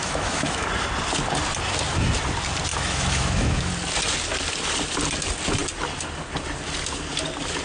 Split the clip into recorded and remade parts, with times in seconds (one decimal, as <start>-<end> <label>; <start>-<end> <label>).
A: 0.0-0.7 remade; 0.7-2.7 recorded; 2.7-3.7 remade; 3.7-7.6 recorded